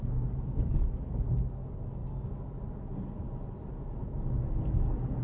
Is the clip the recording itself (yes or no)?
yes